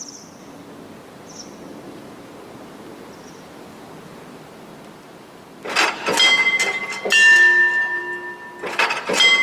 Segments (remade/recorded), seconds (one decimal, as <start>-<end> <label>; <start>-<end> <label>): 0.0-9.4 recorded